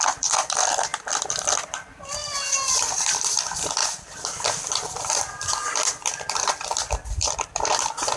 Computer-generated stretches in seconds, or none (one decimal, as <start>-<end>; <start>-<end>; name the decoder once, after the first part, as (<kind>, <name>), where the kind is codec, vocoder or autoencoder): 0.0-8.2 (vocoder, BigVGAN v2)